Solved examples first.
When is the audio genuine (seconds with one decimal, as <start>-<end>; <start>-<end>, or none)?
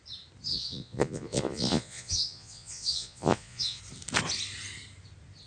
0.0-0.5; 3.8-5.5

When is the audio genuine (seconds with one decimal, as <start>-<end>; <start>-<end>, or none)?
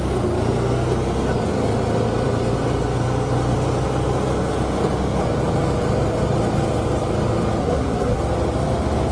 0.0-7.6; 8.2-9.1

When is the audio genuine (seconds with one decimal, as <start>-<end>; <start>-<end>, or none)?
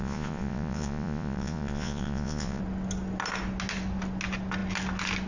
2.6-5.3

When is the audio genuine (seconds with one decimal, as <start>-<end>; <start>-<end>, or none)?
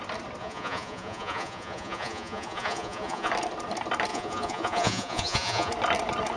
0.0-0.4; 3.3-4.1; 5.7-6.4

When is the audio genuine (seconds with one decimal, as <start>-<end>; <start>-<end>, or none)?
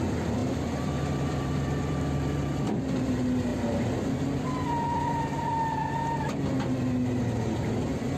3.5-7.7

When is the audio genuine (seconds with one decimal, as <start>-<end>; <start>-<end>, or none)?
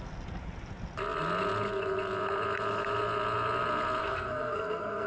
0.0-4.0